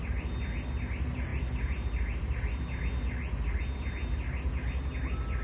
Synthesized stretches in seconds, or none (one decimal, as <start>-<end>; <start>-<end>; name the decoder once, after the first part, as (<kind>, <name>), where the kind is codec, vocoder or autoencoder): none